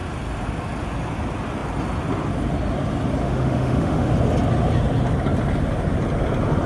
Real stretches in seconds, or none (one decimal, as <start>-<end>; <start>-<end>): 0.0-3.2; 4.1-6.7